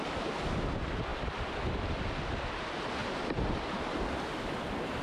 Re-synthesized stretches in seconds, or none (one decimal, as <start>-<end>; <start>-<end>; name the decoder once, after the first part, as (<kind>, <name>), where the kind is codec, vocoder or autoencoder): 3.0-4.1 (vocoder, BigVGAN v2)